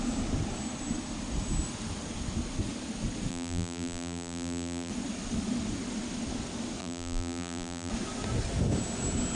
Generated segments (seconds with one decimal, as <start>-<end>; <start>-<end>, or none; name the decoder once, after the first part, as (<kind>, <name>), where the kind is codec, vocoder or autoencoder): 3.3-4.9 (vocoder, BigVGAN v2); 6.8-7.9